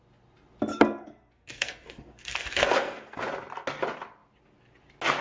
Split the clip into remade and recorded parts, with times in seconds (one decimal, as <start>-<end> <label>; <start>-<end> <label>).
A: 0.0-0.7 recorded; 0.7-3.2 remade; 3.2-5.2 recorded